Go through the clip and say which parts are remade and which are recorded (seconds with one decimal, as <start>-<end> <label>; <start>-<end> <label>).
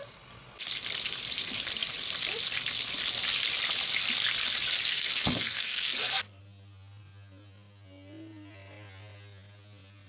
0.0-4.9 recorded; 4.9-6.4 remade; 6.4-10.1 recorded